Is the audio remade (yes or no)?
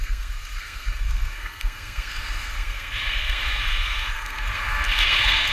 yes